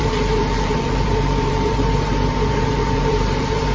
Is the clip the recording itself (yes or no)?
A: no